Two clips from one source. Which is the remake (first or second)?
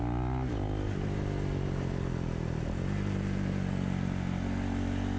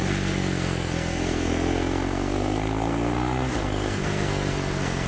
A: second